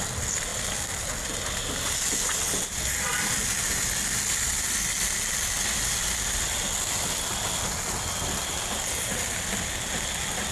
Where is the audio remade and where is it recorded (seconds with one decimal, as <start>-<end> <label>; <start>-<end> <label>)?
0.0-10.5 recorded